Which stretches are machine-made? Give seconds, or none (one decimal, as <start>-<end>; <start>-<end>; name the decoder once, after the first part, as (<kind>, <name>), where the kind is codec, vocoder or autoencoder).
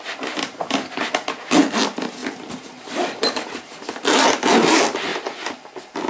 2.2-4.2 (vocoder, BigVGAN v2)